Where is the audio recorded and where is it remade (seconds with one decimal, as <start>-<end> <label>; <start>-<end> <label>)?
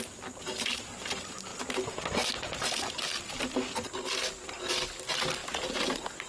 0.0-5.4 recorded; 5.4-6.3 remade